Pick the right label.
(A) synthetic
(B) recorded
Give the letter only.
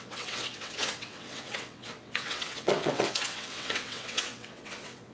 A